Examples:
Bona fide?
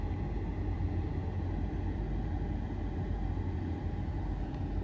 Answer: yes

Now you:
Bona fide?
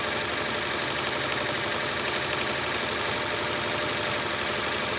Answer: yes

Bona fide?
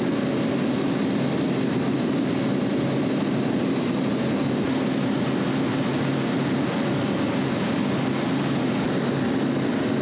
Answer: yes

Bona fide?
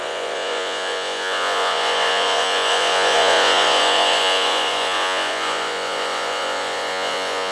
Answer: no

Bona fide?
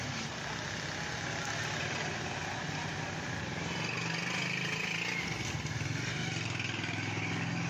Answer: yes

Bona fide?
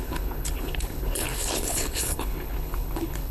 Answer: no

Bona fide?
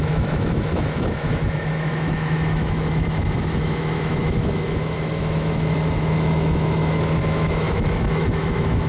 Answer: no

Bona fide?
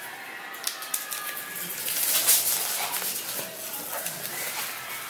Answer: yes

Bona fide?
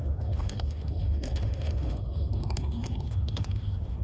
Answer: no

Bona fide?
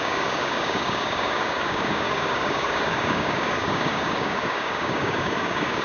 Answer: no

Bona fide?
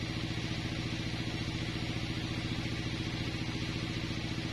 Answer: yes